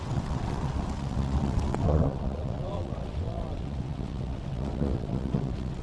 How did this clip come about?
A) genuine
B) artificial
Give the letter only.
B